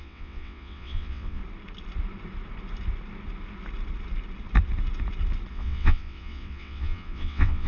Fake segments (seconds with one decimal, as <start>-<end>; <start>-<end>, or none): 0.0-1.4; 5.5-7.7